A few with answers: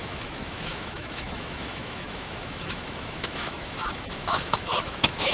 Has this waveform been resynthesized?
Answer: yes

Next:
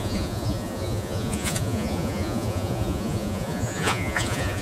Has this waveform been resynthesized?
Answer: yes